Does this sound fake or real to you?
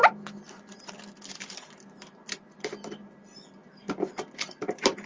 fake